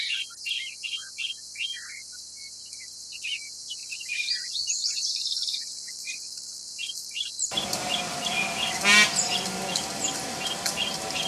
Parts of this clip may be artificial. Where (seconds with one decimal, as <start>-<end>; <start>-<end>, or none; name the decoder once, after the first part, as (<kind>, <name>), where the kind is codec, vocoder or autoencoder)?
3.8-8.0 (vocoder, BigVGAN v2)